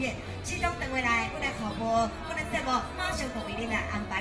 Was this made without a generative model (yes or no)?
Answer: yes